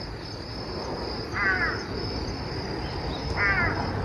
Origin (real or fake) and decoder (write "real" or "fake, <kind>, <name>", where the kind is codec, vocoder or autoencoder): real